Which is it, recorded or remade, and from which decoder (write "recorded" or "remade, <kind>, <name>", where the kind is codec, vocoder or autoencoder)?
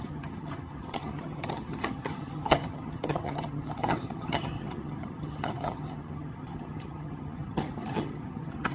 remade, vocoder, HiFi-GAN